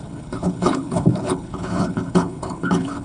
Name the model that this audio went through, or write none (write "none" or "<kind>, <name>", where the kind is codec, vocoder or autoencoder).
codec, HILCodec